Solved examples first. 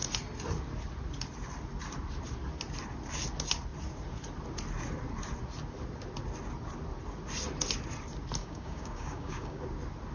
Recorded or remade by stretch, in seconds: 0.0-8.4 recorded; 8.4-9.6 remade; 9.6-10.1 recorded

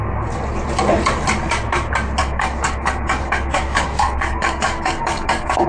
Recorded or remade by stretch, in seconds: 0.0-2.2 recorded; 2.2-5.7 remade

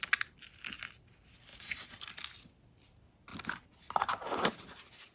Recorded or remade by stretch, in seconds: 0.0-5.1 recorded

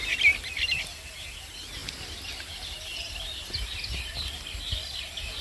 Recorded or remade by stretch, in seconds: 0.0-5.4 recorded

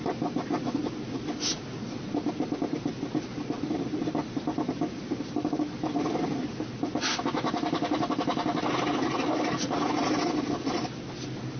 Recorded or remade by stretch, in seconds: 0.0-11.6 recorded

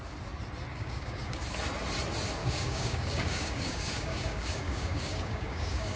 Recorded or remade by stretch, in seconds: 0.0-0.7 recorded; 0.7-1.4 remade; 1.4-2.4 recorded; 2.4-6.0 remade